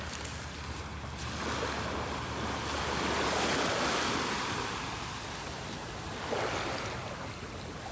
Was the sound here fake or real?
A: real